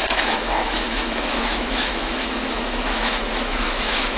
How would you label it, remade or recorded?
remade